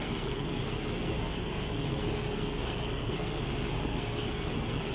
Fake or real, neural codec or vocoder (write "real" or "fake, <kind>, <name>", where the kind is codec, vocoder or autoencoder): fake, codec, SNAC